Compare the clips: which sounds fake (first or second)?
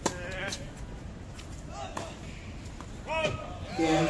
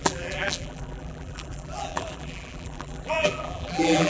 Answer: second